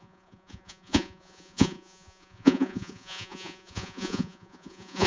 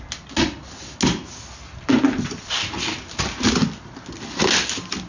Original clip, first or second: second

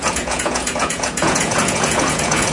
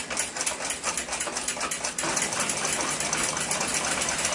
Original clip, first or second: second